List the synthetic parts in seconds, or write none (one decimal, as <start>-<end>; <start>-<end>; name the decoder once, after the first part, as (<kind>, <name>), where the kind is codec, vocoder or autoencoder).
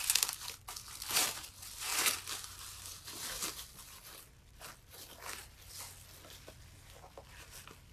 none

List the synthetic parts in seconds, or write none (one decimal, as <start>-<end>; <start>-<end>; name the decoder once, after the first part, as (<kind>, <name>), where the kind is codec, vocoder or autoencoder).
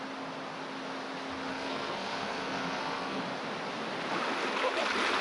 1.5-3.2 (codec, SNAC)